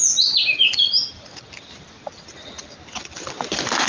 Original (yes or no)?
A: yes